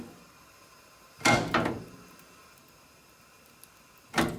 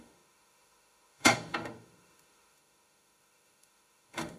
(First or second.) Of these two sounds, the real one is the first